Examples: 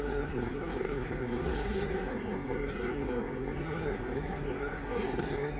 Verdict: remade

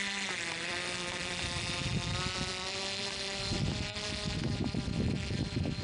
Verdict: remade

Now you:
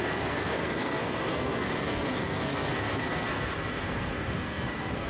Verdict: remade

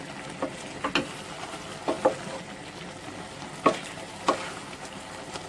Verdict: recorded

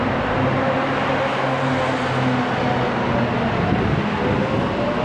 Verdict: recorded